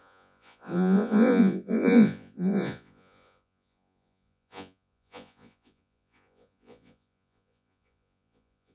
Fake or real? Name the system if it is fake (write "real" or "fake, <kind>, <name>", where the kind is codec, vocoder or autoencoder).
fake, vocoder, Vocos